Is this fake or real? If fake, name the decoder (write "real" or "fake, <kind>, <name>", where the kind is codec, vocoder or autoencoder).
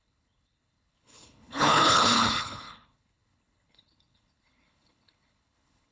fake, codec, HILCodec